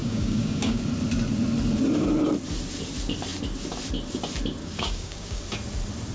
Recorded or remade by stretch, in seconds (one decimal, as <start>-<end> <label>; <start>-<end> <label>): 0.0-0.8 remade; 0.8-4.6 recorded; 4.6-5.4 remade; 5.4-6.1 recorded